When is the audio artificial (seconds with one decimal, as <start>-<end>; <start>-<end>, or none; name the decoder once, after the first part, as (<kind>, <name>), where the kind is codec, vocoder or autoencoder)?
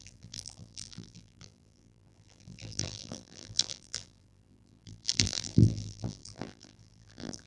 0.0-7.5 (vocoder, BigVGAN v2)